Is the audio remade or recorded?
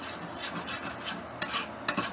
remade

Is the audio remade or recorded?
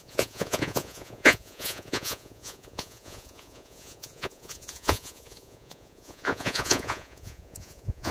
remade